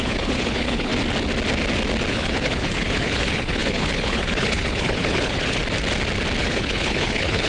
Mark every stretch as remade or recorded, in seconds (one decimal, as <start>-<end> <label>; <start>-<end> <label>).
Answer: 0.0-0.9 remade; 0.9-2.1 recorded; 2.1-5.6 remade; 5.6-6.4 recorded; 6.4-7.5 remade